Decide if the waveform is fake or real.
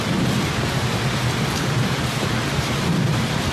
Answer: fake